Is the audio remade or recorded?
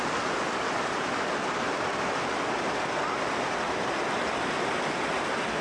recorded